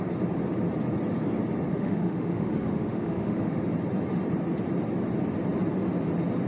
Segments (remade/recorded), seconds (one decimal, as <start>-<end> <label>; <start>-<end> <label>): 0.0-1.7 recorded; 1.7-3.6 remade; 3.6-6.5 recorded